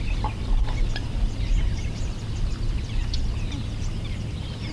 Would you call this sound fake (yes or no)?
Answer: no